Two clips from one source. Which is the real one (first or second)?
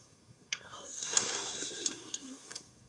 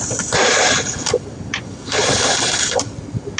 second